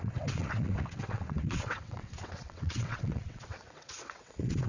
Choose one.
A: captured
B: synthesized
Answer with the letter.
B